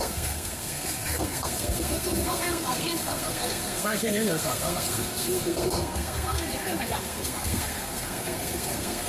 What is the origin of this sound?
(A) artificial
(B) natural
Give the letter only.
A